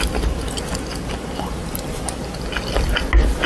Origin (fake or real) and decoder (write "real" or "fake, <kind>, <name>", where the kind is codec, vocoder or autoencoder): real